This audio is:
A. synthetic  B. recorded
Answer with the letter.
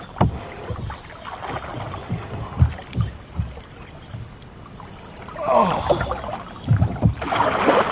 B